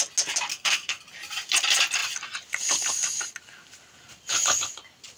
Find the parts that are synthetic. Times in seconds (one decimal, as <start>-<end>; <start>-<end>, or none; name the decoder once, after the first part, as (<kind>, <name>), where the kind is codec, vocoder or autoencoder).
0.5-1.0 (codec, SNAC)